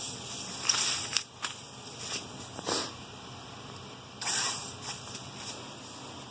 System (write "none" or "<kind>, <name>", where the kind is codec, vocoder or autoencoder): none